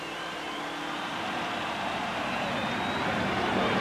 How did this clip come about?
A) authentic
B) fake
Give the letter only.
B